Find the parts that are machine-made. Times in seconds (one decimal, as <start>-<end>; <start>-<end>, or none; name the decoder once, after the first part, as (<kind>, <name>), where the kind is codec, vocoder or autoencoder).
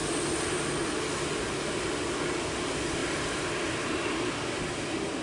none